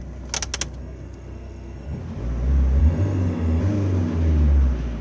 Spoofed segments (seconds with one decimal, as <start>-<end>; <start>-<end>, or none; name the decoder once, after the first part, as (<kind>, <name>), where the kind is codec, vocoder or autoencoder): 0.8-2.0 (codec, SNAC); 2.8-3.6